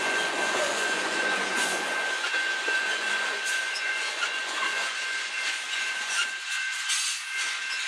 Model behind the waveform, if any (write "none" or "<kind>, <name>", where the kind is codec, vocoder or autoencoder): vocoder, Vocos